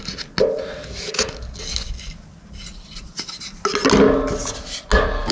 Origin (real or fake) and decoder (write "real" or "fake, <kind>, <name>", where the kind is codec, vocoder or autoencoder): real